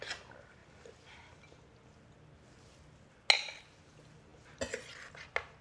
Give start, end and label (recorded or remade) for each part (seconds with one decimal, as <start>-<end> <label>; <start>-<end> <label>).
0.0-5.6 recorded

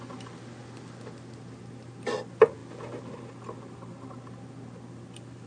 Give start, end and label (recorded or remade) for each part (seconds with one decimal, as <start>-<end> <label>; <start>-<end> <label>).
0.0-5.5 recorded

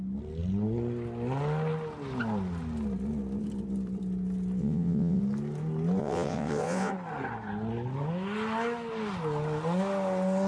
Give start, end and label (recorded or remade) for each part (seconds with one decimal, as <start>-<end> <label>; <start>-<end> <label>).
0.0-4.6 recorded; 4.6-5.2 remade; 5.2-6.0 recorded; 6.0-6.9 remade; 6.9-10.5 recorded

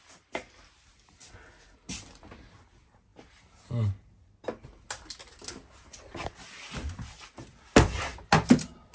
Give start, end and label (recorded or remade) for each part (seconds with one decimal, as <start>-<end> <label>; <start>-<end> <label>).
0.0-8.9 recorded

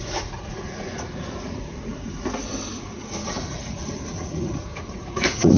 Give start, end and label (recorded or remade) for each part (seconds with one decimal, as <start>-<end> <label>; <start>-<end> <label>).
0.0-2.3 remade; 2.3-2.8 recorded; 2.8-5.6 remade